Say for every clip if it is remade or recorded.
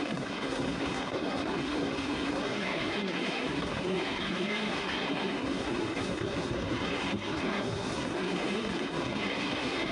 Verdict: remade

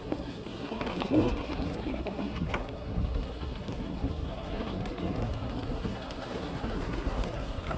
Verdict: remade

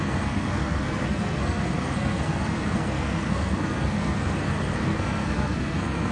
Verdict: remade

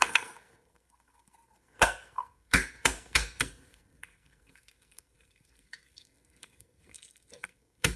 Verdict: remade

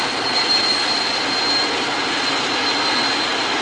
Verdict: recorded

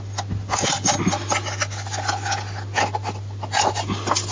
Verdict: recorded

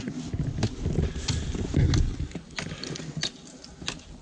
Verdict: recorded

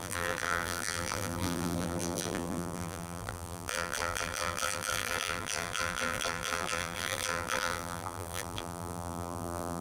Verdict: remade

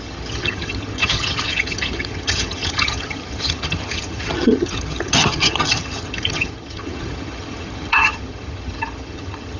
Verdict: remade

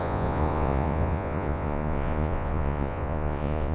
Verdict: remade